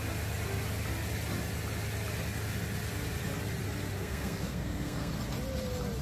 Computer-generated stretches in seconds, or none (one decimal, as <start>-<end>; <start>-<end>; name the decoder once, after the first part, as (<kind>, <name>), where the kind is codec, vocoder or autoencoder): 4.0-5.1 (codec, SNAC)